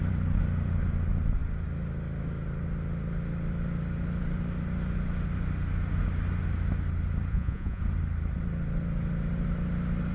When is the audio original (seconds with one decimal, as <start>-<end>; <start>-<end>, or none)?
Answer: 0.0-7.3; 7.8-10.1